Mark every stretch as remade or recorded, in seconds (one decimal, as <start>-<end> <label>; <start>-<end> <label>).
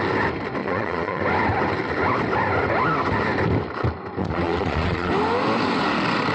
0.0-0.6 recorded; 0.6-1.2 remade; 1.2-4.2 recorded; 4.2-5.1 remade; 5.1-6.3 recorded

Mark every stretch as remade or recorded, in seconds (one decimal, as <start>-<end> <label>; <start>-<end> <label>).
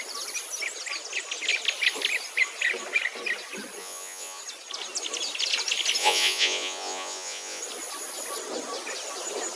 0.0-3.8 recorded; 3.8-4.4 remade; 4.4-6.0 recorded; 6.0-7.6 remade; 7.6-9.6 recorded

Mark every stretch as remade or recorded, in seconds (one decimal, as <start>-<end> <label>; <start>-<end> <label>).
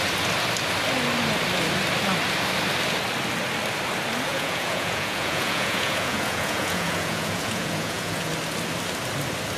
0.0-4.3 recorded; 4.3-8.3 remade; 8.3-9.6 recorded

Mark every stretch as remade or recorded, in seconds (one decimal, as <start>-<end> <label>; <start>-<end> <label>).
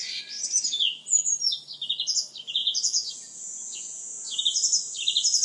0.0-2.6 recorded; 2.6-4.4 remade; 4.4-5.4 recorded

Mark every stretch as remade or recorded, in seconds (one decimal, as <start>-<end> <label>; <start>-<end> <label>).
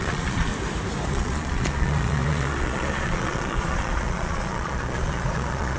0.0-0.5 remade; 0.5-1.1 recorded; 1.1-5.8 remade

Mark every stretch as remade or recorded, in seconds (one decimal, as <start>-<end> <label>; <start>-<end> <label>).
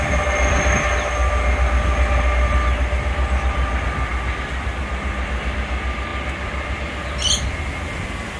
0.0-8.4 recorded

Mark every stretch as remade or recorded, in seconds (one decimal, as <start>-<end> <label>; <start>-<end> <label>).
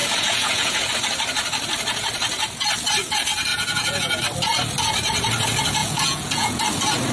0.0-0.9 remade; 0.9-3.5 recorded; 3.5-4.2 remade; 4.2-5.8 recorded; 5.8-6.6 remade; 6.6-7.1 recorded